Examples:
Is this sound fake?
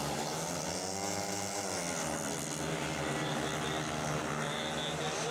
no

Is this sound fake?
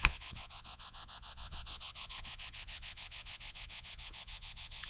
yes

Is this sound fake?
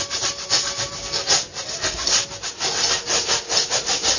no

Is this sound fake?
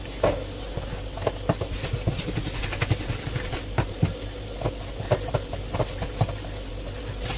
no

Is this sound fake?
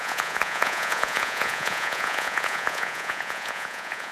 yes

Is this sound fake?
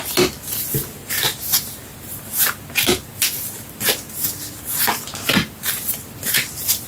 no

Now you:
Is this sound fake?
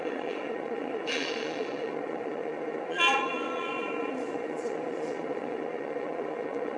yes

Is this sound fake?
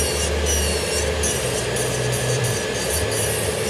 no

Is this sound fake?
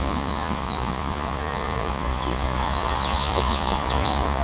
yes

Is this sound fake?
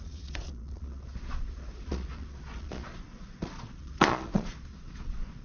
yes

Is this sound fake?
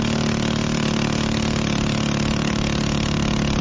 no